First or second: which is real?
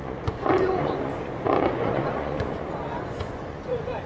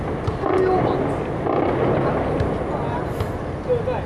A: second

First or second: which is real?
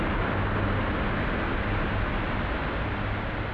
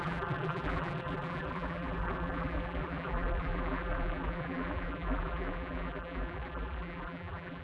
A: first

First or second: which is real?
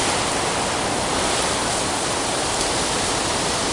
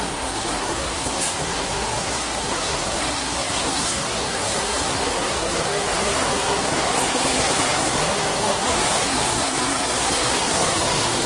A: first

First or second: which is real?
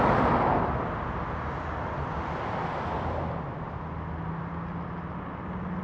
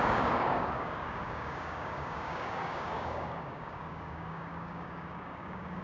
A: first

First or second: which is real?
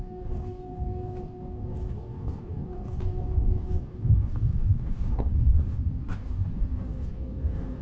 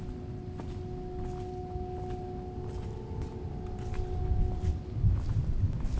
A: second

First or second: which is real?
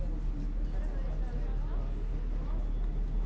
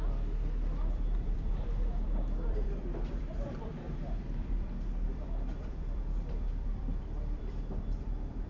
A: first